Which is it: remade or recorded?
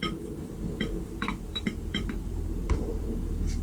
remade